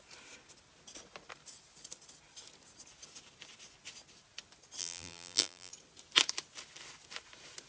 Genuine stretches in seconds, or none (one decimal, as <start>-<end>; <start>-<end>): 0.0-4.8; 5.7-7.7